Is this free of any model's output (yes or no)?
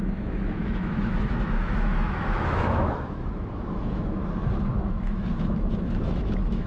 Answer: no